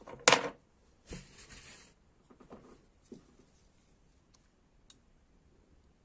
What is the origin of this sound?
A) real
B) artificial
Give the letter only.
A